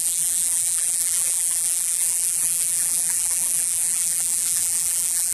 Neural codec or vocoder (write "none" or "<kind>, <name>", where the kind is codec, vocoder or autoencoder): vocoder, BigVGAN v2